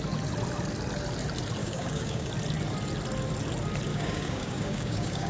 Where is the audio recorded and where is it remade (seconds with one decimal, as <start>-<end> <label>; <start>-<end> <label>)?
0.0-1.6 recorded; 1.6-2.3 remade; 2.3-3.9 recorded; 3.9-5.3 remade

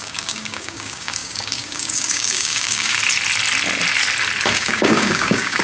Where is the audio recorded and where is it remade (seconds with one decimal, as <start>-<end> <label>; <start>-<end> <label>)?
0.0-3.0 remade; 3.0-4.5 recorded; 4.5-5.6 remade

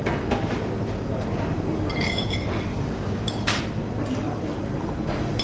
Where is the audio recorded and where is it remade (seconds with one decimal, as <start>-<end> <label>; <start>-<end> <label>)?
0.0-2.7 recorded; 2.7-3.6 remade; 3.6-5.4 recorded

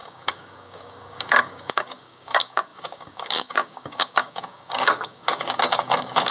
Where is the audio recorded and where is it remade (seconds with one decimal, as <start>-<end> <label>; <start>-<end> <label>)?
0.0-6.3 remade

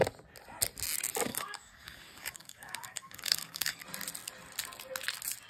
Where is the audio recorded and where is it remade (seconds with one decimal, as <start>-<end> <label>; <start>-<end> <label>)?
0.0-1.3 recorded; 1.3-3.8 remade; 3.8-5.5 recorded

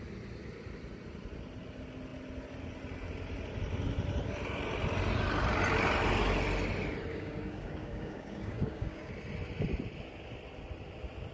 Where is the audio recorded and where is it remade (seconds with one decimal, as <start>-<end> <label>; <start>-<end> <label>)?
0.0-7.1 recorded; 7.1-9.1 remade; 9.1-11.3 recorded

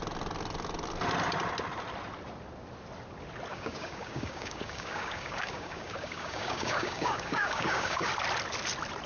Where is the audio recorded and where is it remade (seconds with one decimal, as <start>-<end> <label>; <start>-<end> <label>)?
0.0-3.5 recorded; 3.5-8.1 remade; 8.1-9.1 recorded